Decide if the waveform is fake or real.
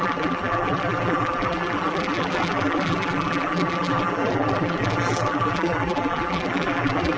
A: fake